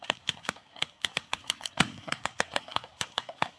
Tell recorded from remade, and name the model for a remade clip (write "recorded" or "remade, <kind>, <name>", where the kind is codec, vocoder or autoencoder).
remade, codec, SNAC